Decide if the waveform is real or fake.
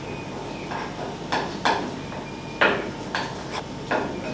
real